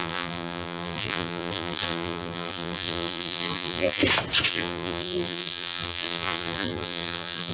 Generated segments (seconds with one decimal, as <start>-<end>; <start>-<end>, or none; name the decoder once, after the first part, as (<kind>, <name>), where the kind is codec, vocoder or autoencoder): 0.0-4.0 (vocoder, BigVGAN v2); 4.5-7.5